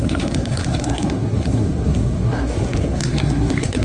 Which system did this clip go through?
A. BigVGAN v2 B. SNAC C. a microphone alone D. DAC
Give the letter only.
B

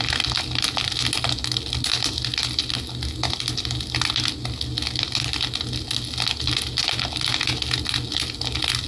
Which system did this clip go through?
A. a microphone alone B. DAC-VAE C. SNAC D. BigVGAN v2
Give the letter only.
A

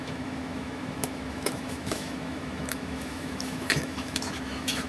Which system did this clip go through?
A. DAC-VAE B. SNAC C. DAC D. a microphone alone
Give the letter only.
A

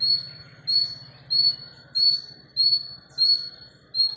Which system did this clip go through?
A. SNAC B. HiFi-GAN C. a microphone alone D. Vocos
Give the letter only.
C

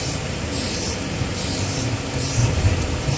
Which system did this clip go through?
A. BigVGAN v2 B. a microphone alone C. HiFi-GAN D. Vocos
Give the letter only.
A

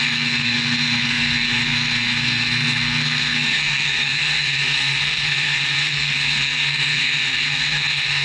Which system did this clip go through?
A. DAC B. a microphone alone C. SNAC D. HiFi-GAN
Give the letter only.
C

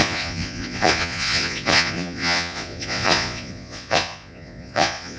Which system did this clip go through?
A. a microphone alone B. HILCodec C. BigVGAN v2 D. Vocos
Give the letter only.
D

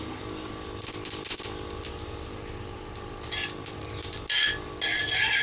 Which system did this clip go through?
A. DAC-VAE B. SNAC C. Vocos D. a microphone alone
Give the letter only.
D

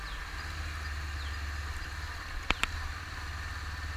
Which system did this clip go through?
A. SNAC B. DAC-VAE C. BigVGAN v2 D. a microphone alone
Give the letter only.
D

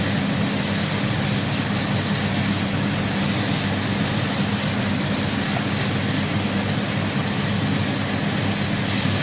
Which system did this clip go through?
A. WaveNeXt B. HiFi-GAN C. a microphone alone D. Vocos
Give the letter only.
C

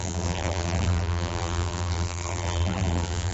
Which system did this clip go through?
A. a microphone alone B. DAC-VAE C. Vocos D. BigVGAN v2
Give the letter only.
D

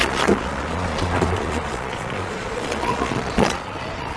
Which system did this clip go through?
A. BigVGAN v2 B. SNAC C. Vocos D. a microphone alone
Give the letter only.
C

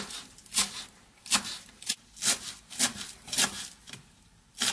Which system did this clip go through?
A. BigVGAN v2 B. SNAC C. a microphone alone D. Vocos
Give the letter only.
C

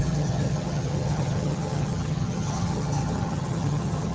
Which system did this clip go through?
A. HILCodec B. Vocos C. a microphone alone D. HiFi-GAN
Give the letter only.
D